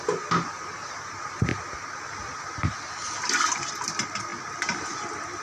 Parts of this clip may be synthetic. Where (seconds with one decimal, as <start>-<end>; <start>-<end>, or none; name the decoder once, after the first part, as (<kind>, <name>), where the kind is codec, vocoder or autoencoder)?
0.0-1.5 (vocoder, BigVGAN v2); 3.7-4.3; 4.9-5.4